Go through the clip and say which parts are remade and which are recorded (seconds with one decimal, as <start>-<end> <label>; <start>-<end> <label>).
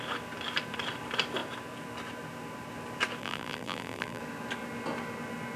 0.0-3.2 recorded; 3.2-4.2 remade; 4.2-5.6 recorded